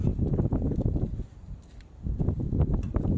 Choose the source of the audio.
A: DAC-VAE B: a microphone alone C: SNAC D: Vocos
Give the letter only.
B